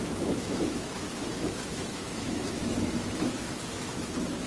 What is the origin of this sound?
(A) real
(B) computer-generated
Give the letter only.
B